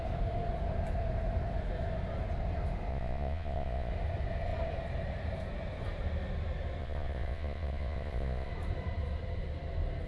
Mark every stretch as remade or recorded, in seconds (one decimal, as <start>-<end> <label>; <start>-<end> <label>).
0.0-2.9 recorded; 2.9-3.9 remade; 3.9-6.8 recorded; 6.8-8.5 remade; 8.5-10.1 recorded